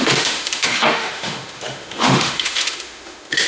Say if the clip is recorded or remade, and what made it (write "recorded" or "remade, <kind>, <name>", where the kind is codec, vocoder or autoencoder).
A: remade, autoencoder, DAC-VAE